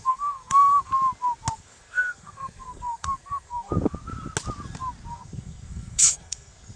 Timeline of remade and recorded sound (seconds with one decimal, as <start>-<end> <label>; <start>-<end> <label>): 0.0-0.9 remade; 0.9-1.5 recorded; 1.5-3.7 remade; 3.7-5.1 recorded; 5.1-6.8 remade